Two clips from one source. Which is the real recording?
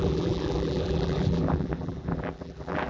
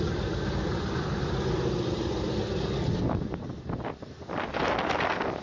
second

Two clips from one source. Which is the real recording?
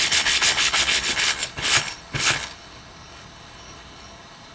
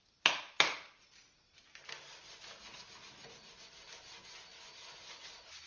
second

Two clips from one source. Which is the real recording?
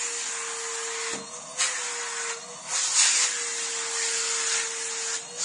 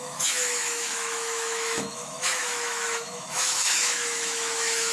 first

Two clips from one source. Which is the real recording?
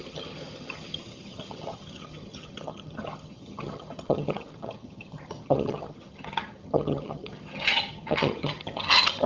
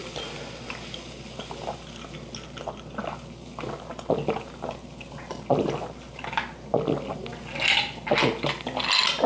second